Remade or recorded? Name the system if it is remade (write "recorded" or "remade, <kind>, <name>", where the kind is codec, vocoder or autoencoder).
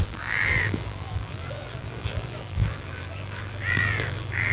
remade, vocoder, BigVGAN v2